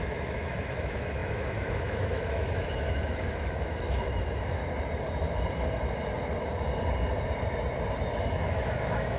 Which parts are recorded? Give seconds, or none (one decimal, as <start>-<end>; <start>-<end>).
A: 4.6-8.2